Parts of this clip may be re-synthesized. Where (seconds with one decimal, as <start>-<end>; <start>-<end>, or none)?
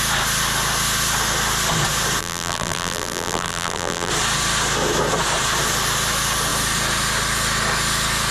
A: 2.2-4.1